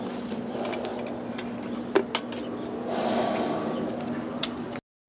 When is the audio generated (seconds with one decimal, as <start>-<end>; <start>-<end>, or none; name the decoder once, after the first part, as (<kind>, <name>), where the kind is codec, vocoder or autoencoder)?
none